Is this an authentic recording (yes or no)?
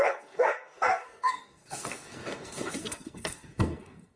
no